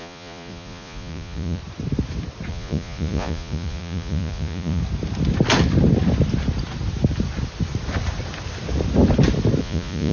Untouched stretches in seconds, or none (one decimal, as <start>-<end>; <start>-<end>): 1.6-2.5; 4.8-9.6